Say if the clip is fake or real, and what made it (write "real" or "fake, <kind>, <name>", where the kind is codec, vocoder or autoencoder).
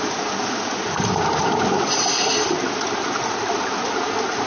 real